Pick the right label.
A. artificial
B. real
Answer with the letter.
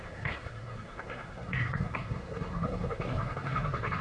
A